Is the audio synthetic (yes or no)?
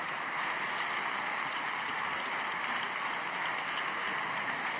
no